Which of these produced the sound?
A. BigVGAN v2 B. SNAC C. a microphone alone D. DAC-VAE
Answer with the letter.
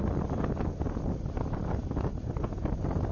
C